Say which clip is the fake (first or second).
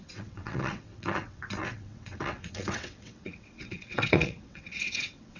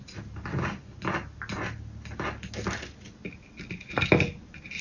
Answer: first